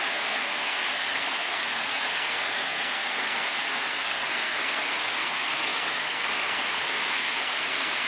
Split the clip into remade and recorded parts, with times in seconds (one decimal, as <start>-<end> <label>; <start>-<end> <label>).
0.0-8.1 remade